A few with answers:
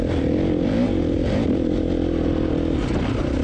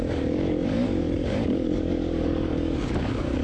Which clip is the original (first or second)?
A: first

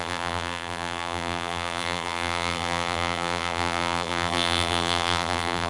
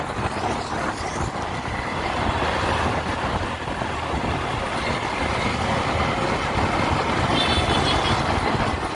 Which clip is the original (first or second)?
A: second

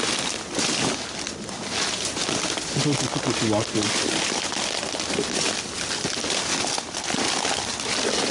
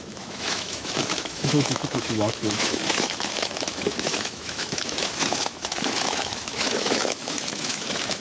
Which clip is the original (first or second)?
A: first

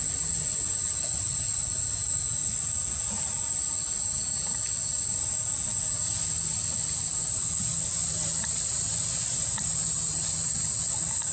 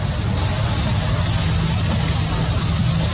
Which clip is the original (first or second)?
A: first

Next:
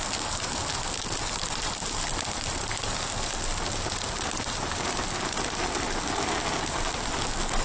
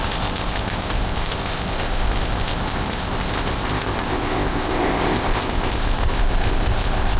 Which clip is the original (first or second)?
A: first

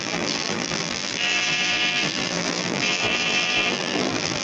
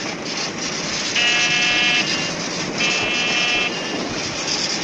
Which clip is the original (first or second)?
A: second